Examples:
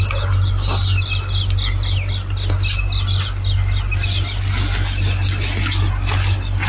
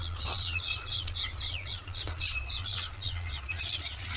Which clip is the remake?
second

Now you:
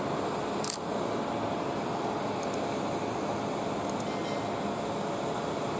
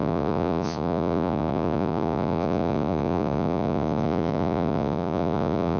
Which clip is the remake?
second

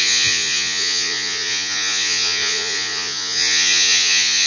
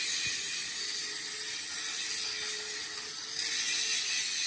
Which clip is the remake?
first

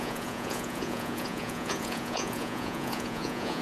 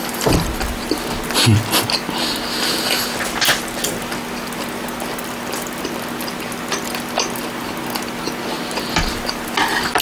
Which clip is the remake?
first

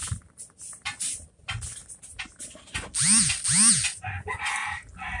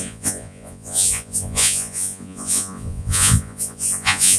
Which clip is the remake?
second